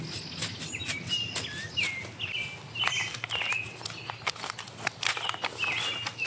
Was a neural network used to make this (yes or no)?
no